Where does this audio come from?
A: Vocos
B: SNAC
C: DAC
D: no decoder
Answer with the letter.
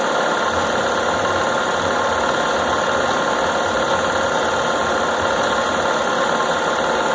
D